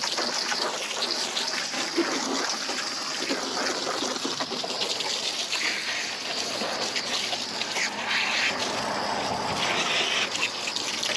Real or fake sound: real